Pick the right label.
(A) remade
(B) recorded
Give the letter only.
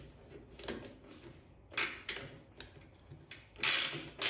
B